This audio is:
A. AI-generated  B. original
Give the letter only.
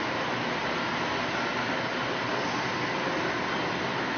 B